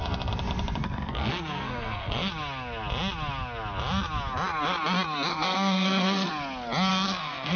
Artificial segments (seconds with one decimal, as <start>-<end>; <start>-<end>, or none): 0.8-2.3; 5.3-6.3; 6.9-7.6